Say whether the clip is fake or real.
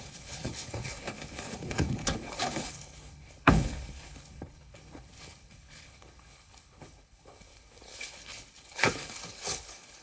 fake